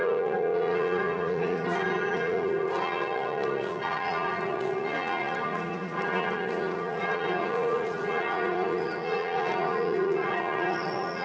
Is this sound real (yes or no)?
no